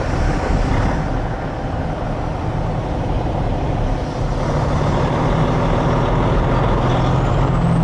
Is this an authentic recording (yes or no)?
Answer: yes